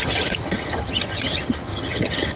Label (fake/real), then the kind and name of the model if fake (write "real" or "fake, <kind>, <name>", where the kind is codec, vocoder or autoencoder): fake, vocoder, HiFi-GAN